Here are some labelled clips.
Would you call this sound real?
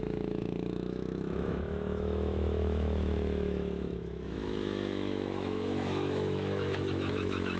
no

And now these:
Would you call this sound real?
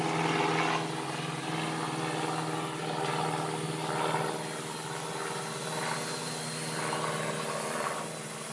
yes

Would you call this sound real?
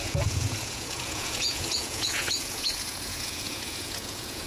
no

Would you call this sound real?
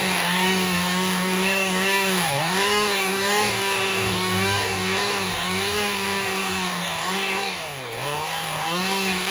no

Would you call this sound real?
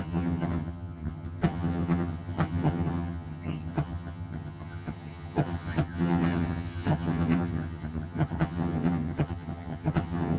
no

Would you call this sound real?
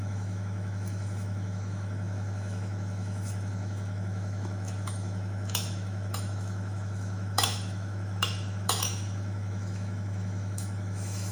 no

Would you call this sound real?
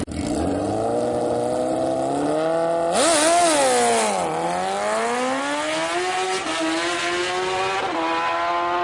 yes